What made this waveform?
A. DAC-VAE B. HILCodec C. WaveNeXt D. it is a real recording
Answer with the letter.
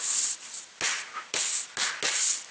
D